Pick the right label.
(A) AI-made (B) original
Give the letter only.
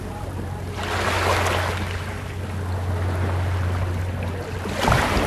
B